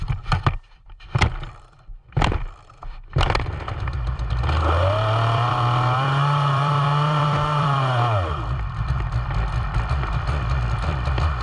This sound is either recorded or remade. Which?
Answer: remade